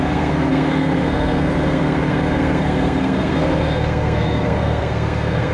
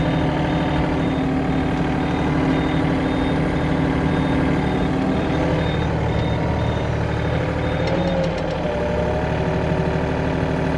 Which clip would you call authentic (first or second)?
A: second